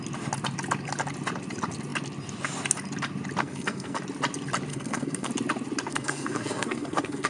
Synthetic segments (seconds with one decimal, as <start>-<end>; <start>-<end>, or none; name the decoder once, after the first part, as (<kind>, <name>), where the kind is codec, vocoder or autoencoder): 3.4-4.0 (codec, SNAC); 4.7-5.3; 5.9-7.3